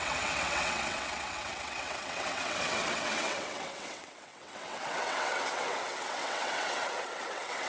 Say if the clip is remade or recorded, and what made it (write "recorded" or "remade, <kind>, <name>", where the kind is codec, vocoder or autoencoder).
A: remade, vocoder, WaveNeXt